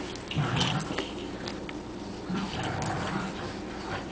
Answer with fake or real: real